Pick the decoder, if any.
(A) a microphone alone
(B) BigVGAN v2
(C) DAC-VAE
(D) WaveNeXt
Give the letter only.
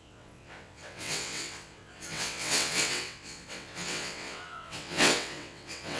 D